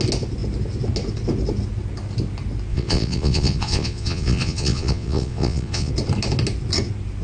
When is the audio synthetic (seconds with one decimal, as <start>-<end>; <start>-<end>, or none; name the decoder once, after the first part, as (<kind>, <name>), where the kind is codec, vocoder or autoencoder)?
2.7-5.9 (vocoder, Vocos)